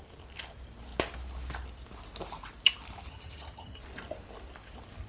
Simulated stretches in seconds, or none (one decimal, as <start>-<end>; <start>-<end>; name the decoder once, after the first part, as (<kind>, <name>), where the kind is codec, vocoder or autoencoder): 3.1-3.8 (vocoder, HiFi-GAN)